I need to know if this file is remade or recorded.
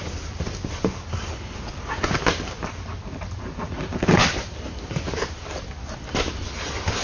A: recorded